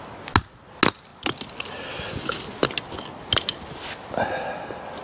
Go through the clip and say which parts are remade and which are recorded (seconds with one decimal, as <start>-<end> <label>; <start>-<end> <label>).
0.0-5.0 recorded